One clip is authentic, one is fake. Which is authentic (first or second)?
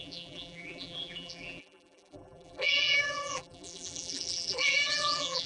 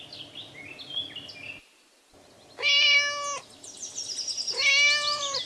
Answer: second